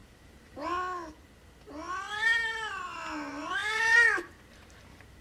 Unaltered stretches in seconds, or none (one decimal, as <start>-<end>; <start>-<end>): 0.7-3.4